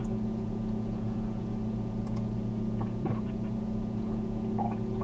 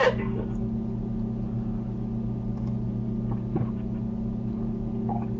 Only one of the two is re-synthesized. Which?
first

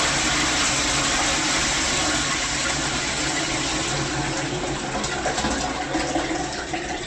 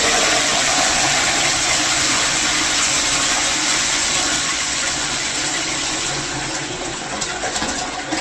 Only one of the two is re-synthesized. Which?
second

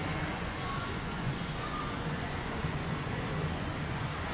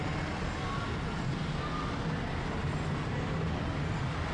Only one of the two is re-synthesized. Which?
first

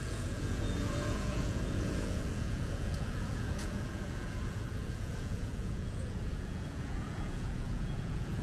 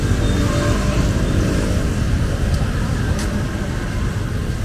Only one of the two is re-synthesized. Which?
first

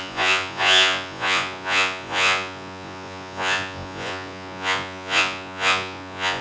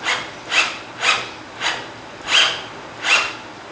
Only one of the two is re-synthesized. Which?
first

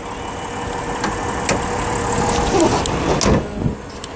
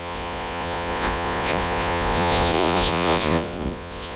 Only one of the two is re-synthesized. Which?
second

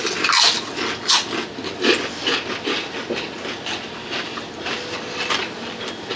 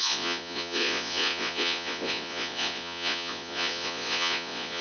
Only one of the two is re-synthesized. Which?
second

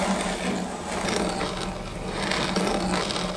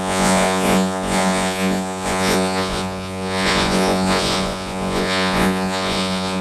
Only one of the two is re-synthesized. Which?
second